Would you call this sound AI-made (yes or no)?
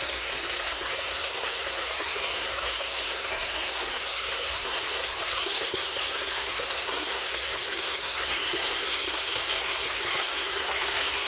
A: yes